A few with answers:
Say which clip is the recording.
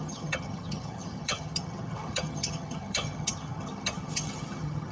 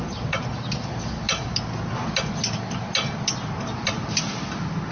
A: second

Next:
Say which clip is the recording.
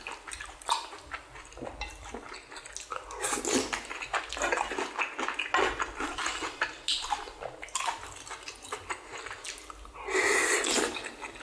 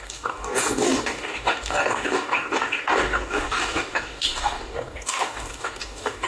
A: first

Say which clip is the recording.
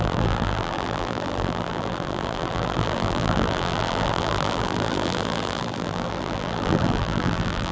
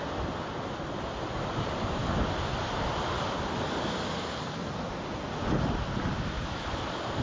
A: second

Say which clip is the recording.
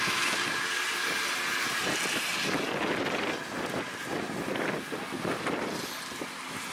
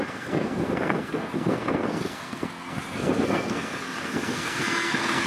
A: first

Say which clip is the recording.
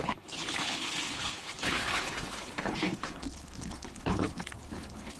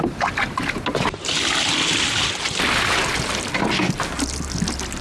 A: second